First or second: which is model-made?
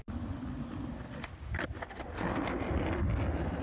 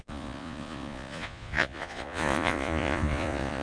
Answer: second